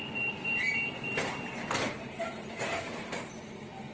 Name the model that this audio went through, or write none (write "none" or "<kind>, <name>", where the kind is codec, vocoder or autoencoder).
none